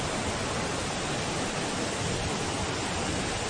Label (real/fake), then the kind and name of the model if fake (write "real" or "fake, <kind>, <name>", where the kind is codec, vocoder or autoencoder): fake, vocoder, BigVGAN v2